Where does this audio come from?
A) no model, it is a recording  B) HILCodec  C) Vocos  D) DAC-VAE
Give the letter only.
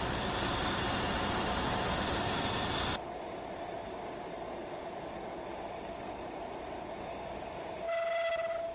A